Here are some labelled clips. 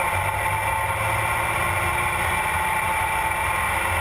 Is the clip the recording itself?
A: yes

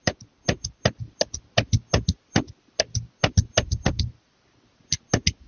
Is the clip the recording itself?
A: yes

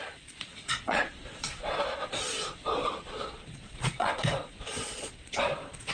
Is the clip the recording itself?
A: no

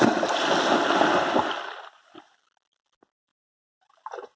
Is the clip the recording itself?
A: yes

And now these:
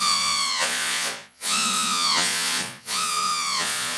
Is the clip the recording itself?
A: no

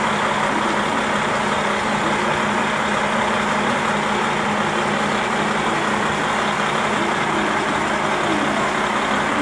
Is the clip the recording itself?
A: yes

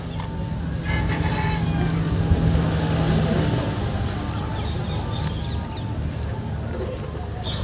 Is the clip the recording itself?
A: yes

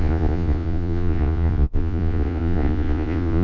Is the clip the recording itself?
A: no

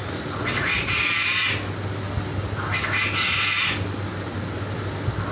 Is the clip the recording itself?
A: yes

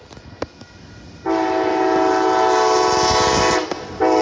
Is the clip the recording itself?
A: yes